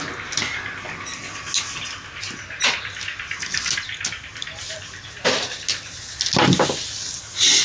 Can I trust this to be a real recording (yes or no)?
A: yes